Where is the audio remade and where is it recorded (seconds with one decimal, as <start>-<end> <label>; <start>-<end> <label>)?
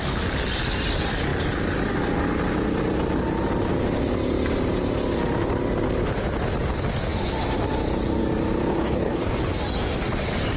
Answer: 0.0-8.7 recorded; 8.7-9.3 remade; 9.3-10.6 recorded